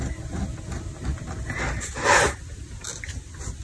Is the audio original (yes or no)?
yes